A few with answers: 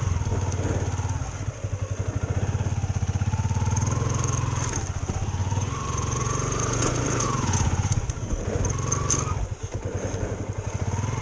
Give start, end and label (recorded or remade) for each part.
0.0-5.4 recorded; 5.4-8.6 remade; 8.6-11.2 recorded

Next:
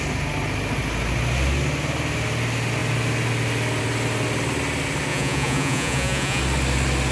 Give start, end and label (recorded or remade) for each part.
0.0-5.1 recorded; 5.1-6.4 remade; 6.4-7.1 recorded